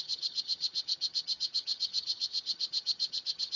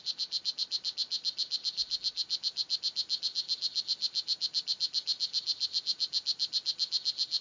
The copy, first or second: first